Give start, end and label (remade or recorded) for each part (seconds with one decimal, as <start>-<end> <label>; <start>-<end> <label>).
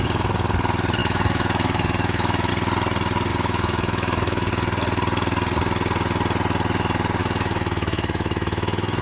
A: 0.0-1.0 recorded; 1.0-2.5 remade; 2.5-3.3 recorded; 3.3-4.5 remade; 4.5-7.2 recorded; 7.2-9.0 remade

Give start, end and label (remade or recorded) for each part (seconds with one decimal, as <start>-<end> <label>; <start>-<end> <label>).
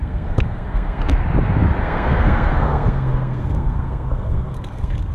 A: 0.0-1.0 remade; 1.0-1.8 recorded; 1.8-5.1 remade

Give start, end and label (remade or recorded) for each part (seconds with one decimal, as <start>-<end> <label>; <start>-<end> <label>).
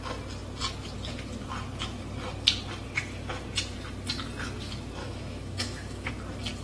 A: 0.0-5.0 recorded; 5.0-6.1 remade; 6.1-6.6 recorded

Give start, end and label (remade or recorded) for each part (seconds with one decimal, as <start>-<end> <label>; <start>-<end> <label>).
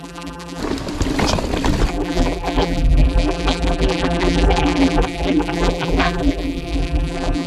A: 0.0-0.6 remade; 0.6-1.9 recorded; 1.9-7.5 remade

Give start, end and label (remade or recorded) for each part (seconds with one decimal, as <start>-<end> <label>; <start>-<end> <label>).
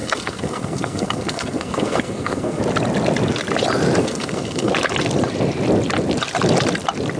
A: 0.0-2.6 remade; 2.6-4.0 recorded; 4.0-4.7 remade; 4.7-7.2 recorded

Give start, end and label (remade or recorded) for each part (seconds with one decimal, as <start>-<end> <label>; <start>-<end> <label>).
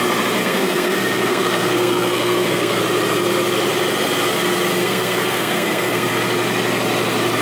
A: 0.0-0.4 recorded; 0.4-2.8 remade; 2.8-4.8 recorded; 4.8-6.1 remade; 6.1-7.4 recorded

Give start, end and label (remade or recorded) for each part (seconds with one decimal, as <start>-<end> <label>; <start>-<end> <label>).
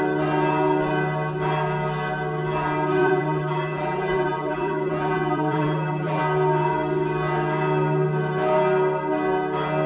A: 0.0-3.0 recorded; 3.0-6.2 remade; 6.2-9.9 recorded